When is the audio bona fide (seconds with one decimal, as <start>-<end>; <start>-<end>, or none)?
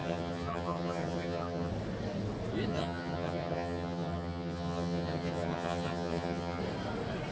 1.7-2.7; 6.6-7.3